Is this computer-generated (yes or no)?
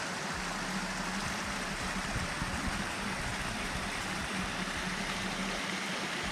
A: no